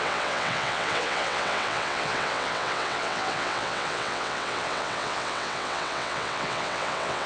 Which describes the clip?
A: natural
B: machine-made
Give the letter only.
B